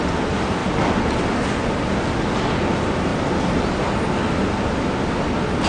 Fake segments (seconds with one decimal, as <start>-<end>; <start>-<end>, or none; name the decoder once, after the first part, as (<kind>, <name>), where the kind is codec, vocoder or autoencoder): none